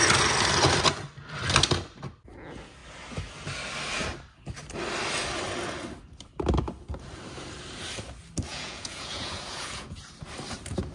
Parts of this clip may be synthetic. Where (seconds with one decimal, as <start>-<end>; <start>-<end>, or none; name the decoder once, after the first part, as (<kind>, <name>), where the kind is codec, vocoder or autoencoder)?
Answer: 8.5-10.0 (vocoder, Vocos)